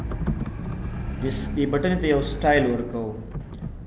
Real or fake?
real